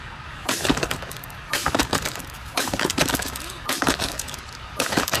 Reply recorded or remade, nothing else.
remade